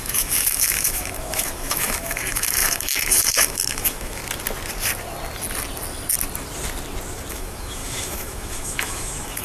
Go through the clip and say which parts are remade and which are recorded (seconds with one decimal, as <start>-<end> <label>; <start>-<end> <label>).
0.0-4.2 remade; 4.2-7.3 recorded; 7.3-9.4 remade